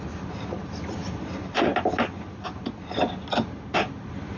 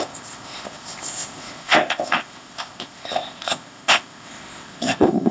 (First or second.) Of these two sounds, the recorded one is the first